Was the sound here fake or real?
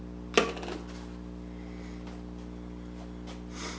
real